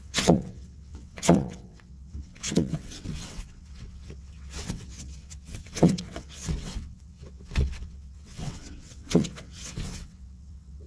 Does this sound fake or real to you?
fake